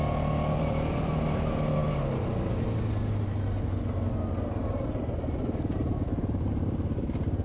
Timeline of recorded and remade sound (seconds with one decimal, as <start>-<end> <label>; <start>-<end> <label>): 0.0-7.4 recorded